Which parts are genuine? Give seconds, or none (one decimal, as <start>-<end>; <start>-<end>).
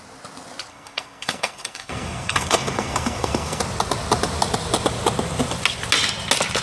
0.0-0.7; 3.6-6.6